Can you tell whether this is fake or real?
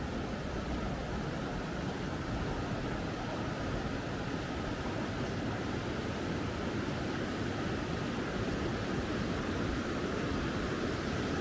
real